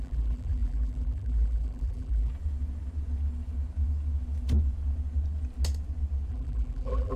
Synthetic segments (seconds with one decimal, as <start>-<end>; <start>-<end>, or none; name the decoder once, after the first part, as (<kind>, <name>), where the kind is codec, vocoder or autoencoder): 0.0-2.3 (vocoder, BigVGAN v2); 6.3-7.2